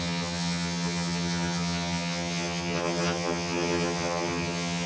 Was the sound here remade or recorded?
remade